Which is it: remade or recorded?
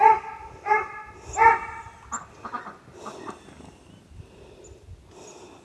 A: recorded